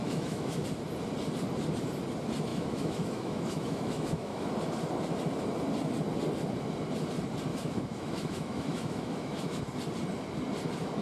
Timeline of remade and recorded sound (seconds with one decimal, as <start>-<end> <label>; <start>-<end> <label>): 0.0-0.6 remade; 0.6-2.5 recorded; 2.5-4.5 remade; 4.5-7.5 recorded; 7.5-9.6 remade; 9.6-11.0 recorded